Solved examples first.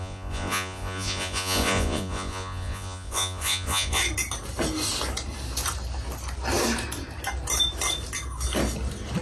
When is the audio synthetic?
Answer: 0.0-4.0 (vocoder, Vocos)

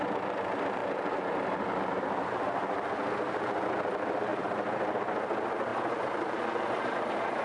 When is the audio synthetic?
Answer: 0.8-1.3 (vocoder, BigVGAN v2); 4.3-5.0; 5.7-6.3

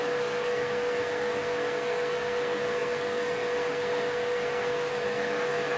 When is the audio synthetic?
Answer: 0.0-5.8 (codec, SNAC)

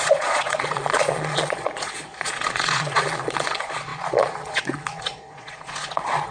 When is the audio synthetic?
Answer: 0.0-6.3 (vocoder, Vocos)